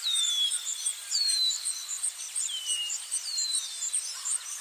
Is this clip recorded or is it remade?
remade